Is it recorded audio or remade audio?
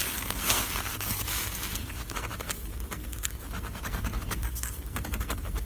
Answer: remade